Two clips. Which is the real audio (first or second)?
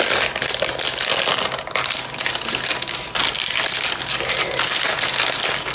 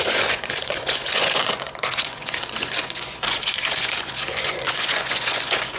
first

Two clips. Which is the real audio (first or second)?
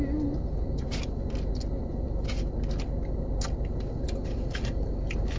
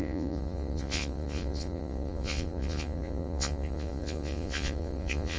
first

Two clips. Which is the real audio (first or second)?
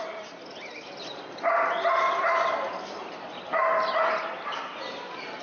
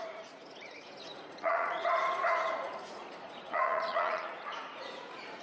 first